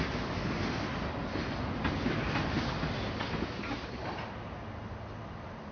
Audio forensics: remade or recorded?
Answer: recorded